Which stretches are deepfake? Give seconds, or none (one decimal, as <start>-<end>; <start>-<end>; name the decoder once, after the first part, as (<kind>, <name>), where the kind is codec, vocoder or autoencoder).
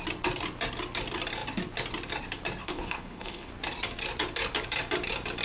2.6-3.5 (codec, HILCodec)